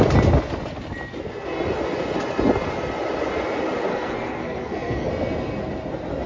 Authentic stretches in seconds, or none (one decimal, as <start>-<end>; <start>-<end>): 0.0-3.9; 5.1-6.3